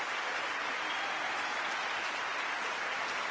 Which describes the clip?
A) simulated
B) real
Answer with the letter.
B